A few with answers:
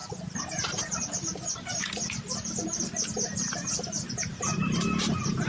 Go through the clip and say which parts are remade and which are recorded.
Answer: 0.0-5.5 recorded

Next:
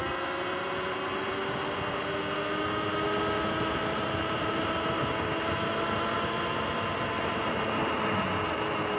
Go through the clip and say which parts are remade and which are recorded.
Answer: 0.0-9.0 recorded

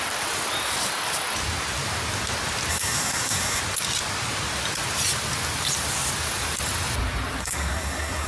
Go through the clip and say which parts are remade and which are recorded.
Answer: 0.0-2.7 recorded; 2.7-3.6 remade; 3.6-7.4 recorded; 7.4-8.3 remade

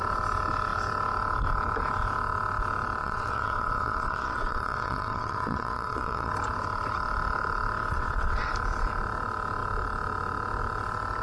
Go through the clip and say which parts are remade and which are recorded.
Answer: 0.0-3.0 recorded; 3.0-6.3 remade; 6.3-7.9 recorded; 7.9-8.5 remade; 8.5-11.2 recorded